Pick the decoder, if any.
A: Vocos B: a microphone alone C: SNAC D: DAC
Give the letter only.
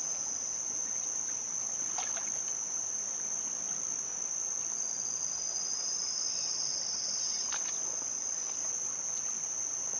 B